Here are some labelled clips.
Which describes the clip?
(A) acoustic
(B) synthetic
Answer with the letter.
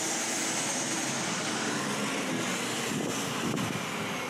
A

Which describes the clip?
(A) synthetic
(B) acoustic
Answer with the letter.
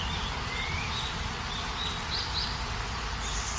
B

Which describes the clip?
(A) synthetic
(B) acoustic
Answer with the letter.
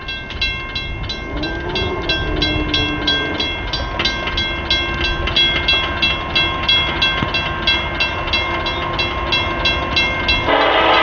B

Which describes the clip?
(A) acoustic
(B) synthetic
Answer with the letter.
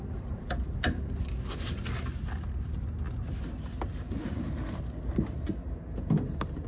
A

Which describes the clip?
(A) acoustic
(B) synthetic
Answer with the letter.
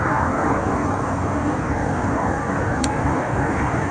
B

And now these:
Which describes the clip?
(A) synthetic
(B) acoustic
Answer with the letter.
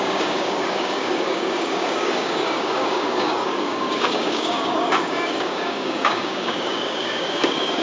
A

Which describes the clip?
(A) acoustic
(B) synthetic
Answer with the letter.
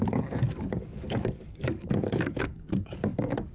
B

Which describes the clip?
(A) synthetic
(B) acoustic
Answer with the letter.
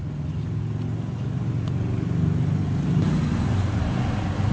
B